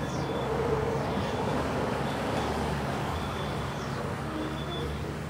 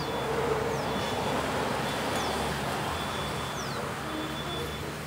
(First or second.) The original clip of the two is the second